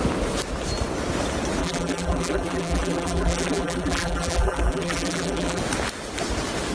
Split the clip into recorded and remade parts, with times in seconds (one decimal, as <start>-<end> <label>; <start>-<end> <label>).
0.0-1.6 recorded; 1.6-5.6 remade; 5.6-6.7 recorded